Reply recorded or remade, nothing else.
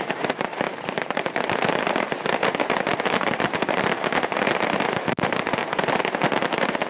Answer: remade